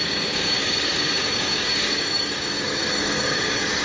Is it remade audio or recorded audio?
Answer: remade